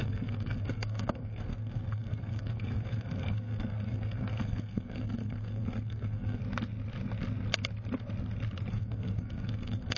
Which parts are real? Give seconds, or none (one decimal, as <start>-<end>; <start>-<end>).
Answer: 6.4-8.7